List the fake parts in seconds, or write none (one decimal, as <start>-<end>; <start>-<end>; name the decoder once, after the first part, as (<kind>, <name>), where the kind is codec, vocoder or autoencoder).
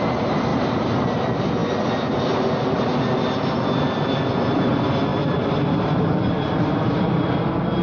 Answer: 0.5-1.0 (vocoder, BigVGAN v2); 5.1-7.3